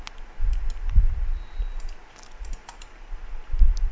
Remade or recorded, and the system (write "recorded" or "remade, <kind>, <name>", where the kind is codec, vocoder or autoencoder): recorded